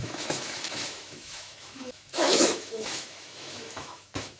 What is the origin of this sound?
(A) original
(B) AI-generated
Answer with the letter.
B